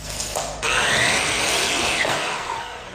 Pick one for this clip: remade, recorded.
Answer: remade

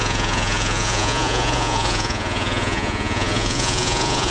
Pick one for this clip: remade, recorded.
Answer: remade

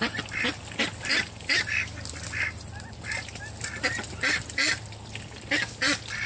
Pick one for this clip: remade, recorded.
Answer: recorded